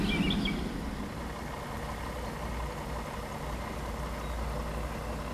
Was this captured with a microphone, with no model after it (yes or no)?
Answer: yes